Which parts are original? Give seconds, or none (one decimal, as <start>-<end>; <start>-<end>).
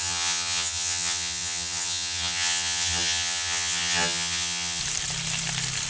4.8-5.9